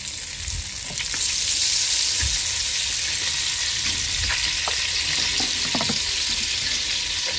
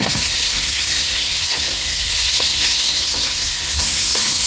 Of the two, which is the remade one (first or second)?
second